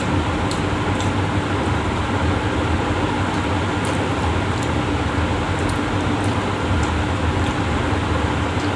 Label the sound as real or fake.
real